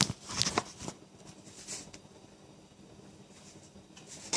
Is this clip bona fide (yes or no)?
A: yes